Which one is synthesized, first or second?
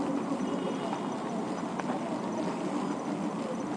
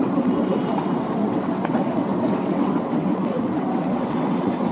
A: second